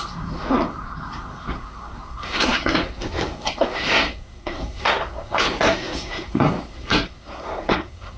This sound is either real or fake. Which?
fake